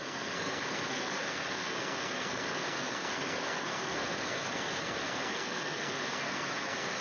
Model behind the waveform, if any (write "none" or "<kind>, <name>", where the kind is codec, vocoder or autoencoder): codec, SNAC